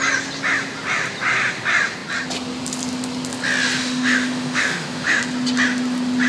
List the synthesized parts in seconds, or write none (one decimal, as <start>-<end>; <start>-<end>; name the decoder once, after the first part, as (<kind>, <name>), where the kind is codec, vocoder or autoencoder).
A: 3.8-5.2 (autoencoder, DAC-VAE)